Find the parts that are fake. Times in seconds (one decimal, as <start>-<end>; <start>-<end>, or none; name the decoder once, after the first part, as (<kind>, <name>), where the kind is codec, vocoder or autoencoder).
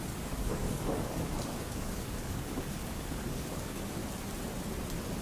0.0-4.0 (codec, DAC)